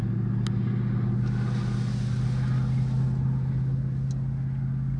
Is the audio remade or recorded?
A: recorded